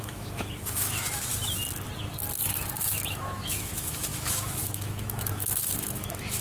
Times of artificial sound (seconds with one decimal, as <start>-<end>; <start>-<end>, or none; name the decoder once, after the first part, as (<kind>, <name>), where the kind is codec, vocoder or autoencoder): 0.0-1.3 (autoencoder, DAC-VAE); 2.4-6.4